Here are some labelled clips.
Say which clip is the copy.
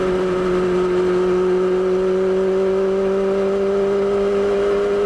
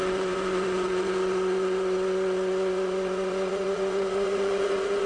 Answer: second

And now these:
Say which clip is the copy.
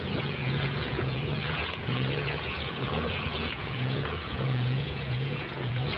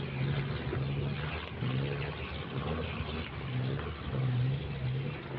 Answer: first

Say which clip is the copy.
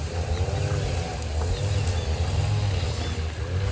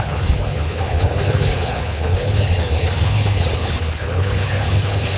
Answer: second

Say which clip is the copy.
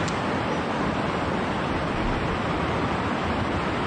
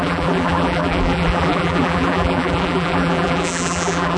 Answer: second